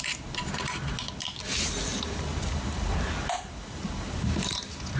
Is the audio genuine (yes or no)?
yes